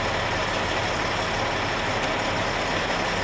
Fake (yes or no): no